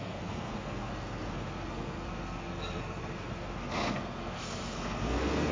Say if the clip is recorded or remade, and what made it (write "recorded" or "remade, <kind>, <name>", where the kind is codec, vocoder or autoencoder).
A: remade, codec, SNAC